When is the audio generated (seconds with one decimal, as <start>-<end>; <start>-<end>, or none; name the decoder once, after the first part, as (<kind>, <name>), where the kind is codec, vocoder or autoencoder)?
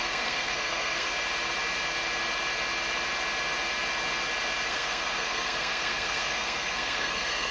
0.0-1.1 (codec, SNAC); 4.7-7.5